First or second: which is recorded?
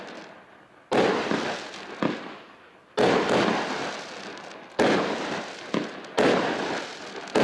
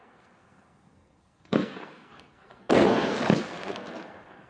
first